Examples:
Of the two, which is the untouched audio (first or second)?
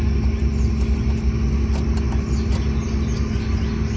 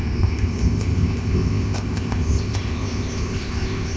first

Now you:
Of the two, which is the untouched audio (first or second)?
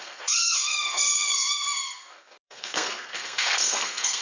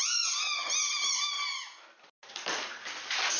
second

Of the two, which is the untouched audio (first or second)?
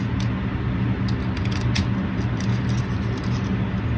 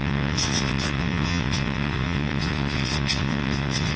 first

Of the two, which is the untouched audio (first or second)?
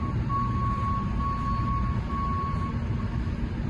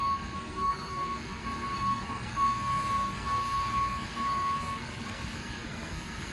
first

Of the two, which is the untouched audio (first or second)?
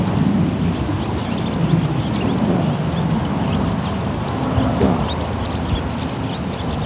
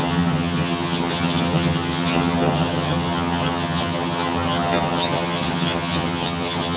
first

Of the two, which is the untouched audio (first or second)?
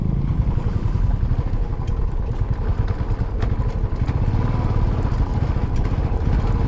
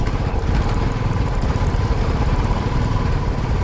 first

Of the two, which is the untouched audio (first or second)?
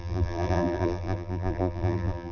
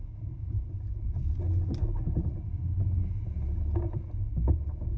second